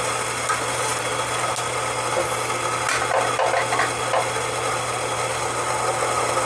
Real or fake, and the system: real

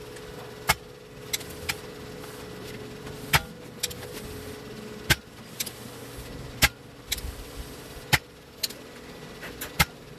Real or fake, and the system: real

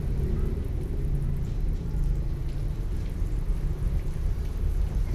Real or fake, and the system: fake, vocoder, BigVGAN v2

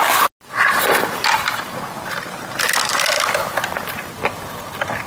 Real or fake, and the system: real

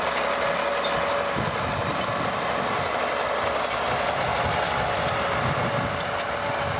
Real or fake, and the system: real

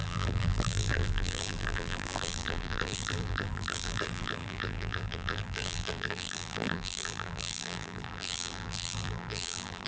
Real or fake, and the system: fake, vocoder, BigVGAN v2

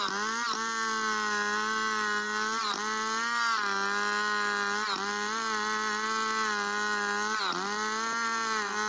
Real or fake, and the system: real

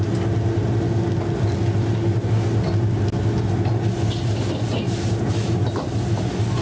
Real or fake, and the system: real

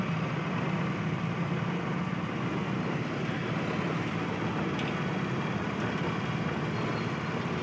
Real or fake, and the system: real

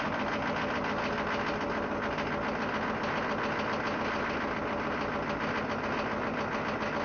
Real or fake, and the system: real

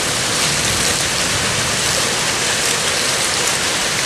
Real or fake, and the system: real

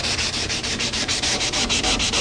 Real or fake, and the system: fake, vocoder, BigVGAN v2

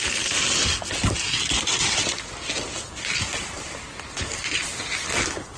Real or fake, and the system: fake, vocoder, BigVGAN v2